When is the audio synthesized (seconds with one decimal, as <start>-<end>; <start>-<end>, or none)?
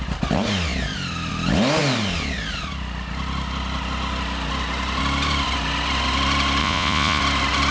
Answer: 6.6-7.2